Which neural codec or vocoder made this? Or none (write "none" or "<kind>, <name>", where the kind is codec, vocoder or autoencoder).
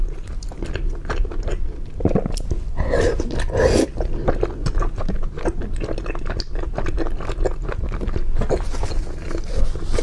none